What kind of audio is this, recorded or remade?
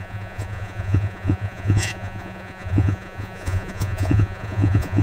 remade